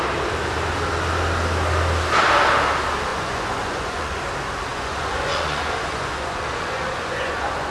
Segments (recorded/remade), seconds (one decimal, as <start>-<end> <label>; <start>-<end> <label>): 0.0-3.1 recorded; 3.1-4.2 remade; 4.2-4.7 recorded; 4.7-7.7 remade

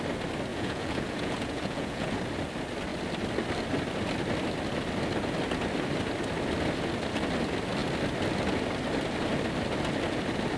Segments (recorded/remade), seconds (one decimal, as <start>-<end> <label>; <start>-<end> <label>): 0.0-0.5 recorded; 0.5-2.2 remade; 2.2-10.6 recorded

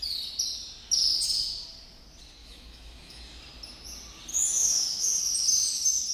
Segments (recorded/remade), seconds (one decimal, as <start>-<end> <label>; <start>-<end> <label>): 0.0-2.4 recorded; 2.4-3.2 remade; 3.2-4.3 recorded; 4.3-5.2 remade; 5.2-6.1 recorded

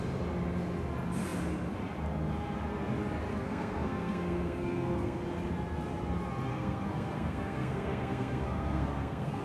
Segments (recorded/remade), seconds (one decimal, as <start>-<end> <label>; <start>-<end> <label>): 0.0-3.3 recorded; 3.3-5.2 remade; 5.2-6.5 recorded; 6.5-9.4 remade

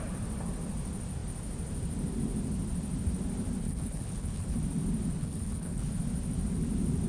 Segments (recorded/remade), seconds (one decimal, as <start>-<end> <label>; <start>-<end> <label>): 0.0-3.6 recorded; 3.6-4.6 remade; 4.6-5.2 recorded; 5.2-5.9 remade; 5.9-7.1 recorded

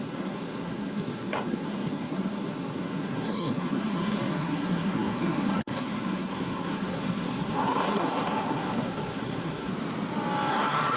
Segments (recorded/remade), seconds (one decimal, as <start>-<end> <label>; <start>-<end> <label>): 0.0-9.7 remade; 9.7-10.5 recorded; 10.5-11.0 remade

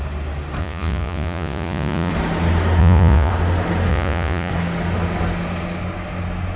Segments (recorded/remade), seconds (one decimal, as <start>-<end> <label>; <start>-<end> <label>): 0.0-0.6 recorded; 0.6-2.1 remade; 2.1-2.8 recorded; 2.8-3.3 remade; 3.3-3.9 recorded; 3.9-4.5 remade; 4.5-6.6 recorded

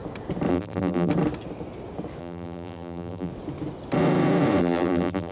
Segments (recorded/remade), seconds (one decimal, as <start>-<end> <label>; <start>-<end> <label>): 0.0-0.5 recorded; 0.5-1.1 remade; 1.1-2.2 recorded; 2.2-3.3 remade; 3.3-4.6 recorded; 4.6-5.3 remade